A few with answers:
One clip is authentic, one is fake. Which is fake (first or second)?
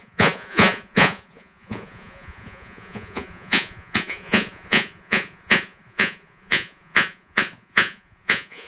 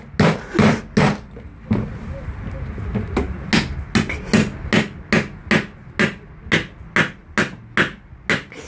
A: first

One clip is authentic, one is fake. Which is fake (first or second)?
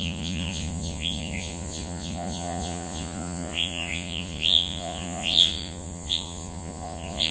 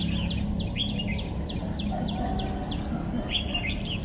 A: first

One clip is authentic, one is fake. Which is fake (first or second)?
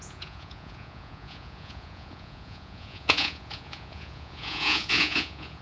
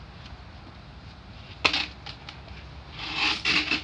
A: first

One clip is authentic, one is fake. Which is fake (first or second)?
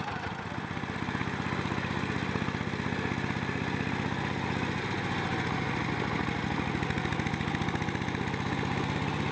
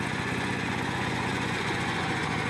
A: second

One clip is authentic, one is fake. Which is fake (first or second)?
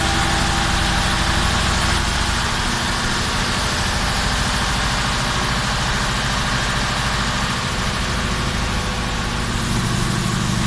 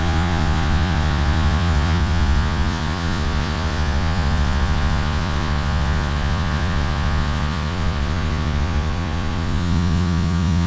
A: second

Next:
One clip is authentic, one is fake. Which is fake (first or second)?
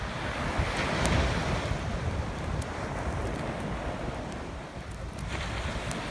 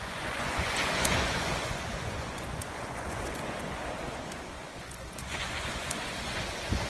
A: second